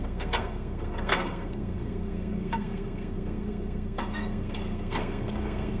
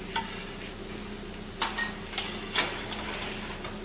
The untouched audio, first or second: second